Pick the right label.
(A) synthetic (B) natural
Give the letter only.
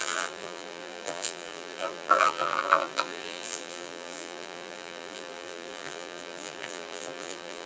A